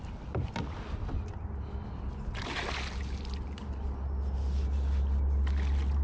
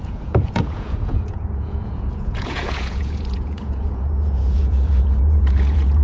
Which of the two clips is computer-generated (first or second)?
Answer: second